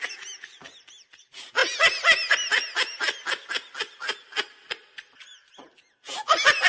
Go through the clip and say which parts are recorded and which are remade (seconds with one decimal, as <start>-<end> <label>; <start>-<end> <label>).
0.0-6.7 recorded